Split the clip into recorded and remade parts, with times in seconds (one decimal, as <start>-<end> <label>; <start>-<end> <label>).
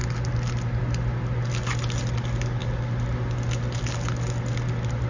0.0-5.1 recorded